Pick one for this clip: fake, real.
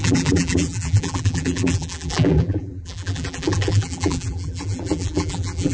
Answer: fake